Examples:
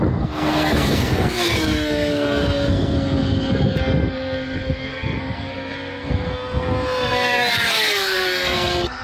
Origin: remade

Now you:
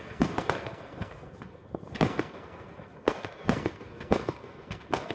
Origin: remade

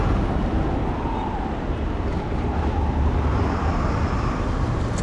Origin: recorded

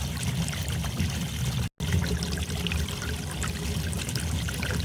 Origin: recorded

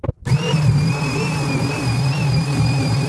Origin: recorded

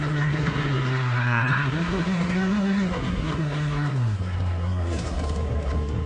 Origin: remade